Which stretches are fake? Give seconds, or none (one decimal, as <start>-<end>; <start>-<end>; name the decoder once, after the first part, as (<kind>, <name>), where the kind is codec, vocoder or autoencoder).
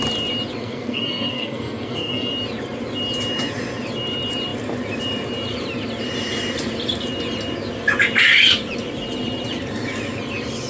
0.6-2.3 (codec, SNAC)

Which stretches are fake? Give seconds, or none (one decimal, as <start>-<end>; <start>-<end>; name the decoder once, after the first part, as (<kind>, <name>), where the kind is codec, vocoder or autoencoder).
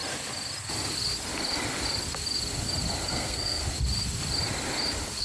3.1-3.6 (codec, SNAC)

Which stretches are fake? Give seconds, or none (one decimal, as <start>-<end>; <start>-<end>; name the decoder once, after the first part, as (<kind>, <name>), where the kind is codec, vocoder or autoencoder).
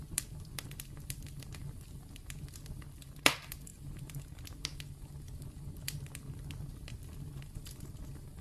none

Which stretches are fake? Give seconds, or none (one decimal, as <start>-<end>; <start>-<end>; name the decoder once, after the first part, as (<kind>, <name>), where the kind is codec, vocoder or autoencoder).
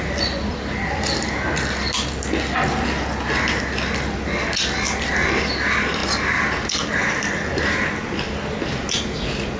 none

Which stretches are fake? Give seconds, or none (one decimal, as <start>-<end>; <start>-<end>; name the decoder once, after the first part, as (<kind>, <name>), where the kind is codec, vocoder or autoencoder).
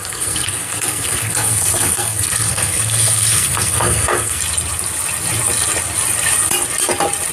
0.0-4.4 (codec, SNAC)